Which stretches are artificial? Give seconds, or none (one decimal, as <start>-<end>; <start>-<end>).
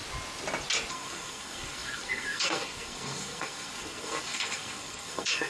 0.9-5.5